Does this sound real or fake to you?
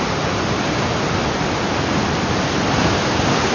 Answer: real